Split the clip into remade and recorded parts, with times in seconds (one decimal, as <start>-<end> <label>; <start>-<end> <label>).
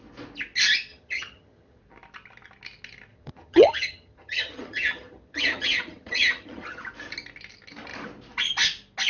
0.0-0.9 recorded; 0.9-1.8 remade; 1.8-3.1 recorded; 3.1-6.8 remade; 6.8-9.1 recorded